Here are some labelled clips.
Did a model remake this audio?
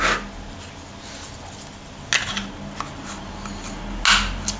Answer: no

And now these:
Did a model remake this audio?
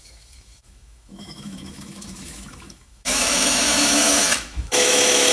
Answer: yes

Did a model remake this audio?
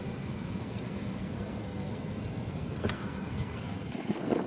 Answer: yes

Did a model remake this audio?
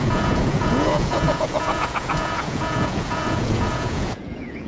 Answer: yes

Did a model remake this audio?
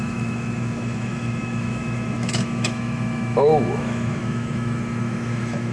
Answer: yes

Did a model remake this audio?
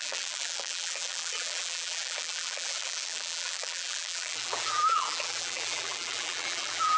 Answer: yes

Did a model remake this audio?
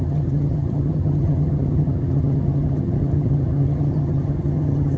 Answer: yes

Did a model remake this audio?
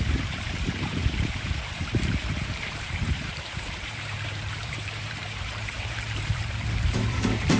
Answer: yes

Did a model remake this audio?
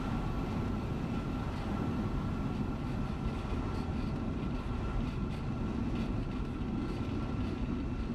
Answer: no